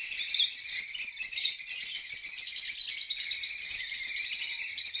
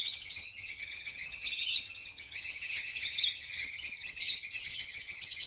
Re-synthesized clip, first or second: second